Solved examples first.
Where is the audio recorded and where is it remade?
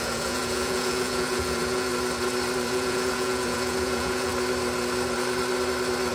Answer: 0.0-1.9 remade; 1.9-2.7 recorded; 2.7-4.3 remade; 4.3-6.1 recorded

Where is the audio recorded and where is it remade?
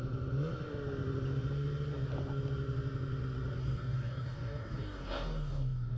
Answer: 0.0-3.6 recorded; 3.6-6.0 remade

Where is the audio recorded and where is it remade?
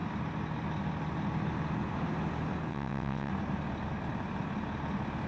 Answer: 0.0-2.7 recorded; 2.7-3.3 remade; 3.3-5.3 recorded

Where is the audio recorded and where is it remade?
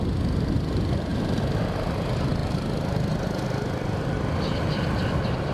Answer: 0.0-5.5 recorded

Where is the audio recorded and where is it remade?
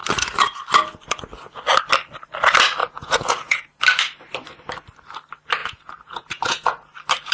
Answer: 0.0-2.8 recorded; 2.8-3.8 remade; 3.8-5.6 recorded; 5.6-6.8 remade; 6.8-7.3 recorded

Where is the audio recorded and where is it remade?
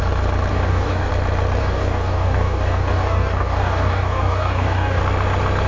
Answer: 0.0-0.5 recorded; 0.5-1.1 remade; 1.1-1.6 recorded; 1.6-5.0 remade; 5.0-5.7 recorded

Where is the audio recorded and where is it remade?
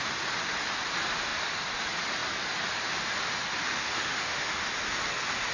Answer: 0.0-3.7 recorded; 3.7-4.6 remade; 4.6-5.5 recorded